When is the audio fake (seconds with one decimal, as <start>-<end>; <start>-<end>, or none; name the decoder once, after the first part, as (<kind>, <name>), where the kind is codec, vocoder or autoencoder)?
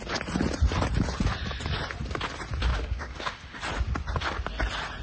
2.7-3.6 (autoencoder, DAC-VAE)